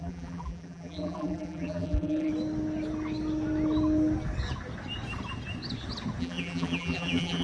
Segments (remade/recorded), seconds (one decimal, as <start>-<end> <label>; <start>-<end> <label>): 0.0-2.3 remade; 2.3-6.2 recorded; 6.2-7.4 remade